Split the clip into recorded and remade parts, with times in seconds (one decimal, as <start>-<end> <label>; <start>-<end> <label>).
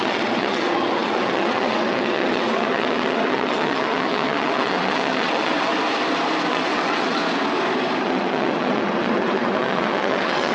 0.0-5.7 remade; 5.7-6.5 recorded; 6.5-7.2 remade; 7.2-8.0 recorded; 8.0-10.5 remade